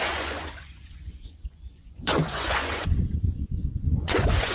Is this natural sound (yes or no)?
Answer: no